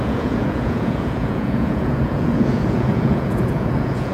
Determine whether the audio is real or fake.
fake